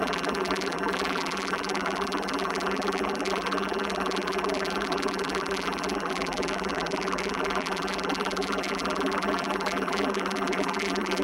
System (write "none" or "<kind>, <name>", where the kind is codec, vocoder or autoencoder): vocoder, BigVGAN v2